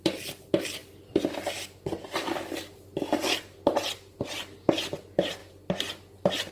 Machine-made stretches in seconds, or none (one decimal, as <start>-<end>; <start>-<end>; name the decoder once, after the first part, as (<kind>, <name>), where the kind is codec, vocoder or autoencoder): none